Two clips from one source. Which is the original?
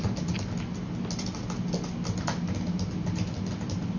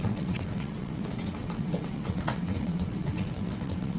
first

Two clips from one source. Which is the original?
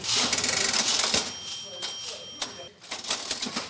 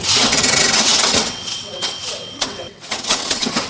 first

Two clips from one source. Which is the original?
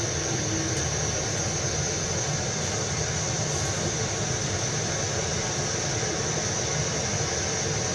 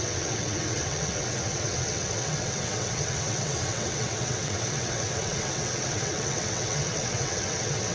first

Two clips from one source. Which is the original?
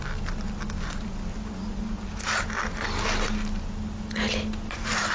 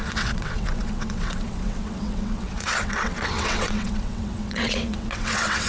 first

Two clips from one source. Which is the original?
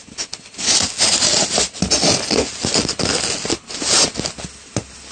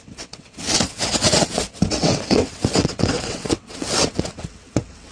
first